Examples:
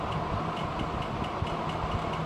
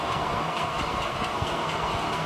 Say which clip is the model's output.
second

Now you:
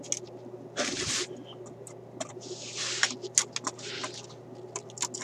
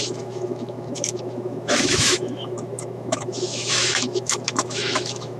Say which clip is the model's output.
second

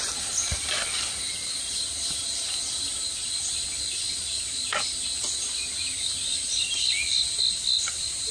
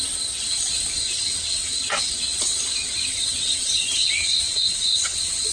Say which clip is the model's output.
second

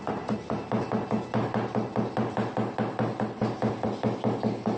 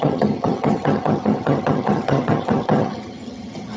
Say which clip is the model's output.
second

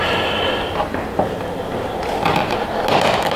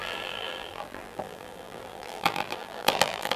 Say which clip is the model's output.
second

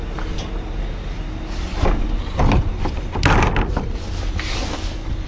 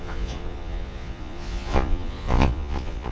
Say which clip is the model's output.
second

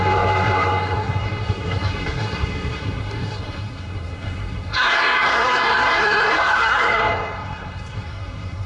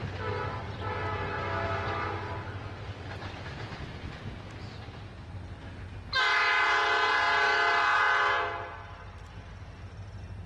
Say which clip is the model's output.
first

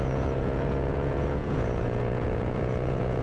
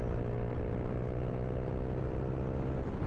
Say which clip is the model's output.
first